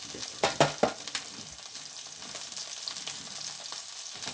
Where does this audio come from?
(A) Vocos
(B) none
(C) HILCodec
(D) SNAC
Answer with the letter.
B